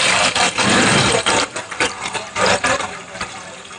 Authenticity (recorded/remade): remade